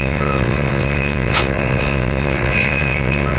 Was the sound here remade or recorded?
remade